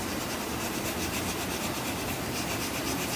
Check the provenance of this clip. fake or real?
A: fake